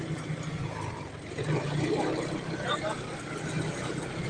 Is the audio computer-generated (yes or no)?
no